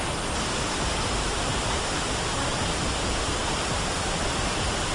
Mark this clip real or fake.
real